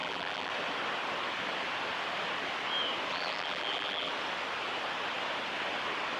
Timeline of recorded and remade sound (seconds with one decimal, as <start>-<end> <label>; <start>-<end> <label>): 0.0-0.5 remade; 0.5-3.1 recorded; 3.1-4.1 remade; 4.1-6.2 recorded

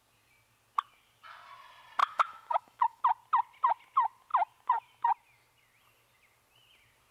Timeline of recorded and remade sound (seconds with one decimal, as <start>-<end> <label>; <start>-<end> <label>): 0.0-2.0 recorded; 2.0-3.0 remade; 3.0-7.1 recorded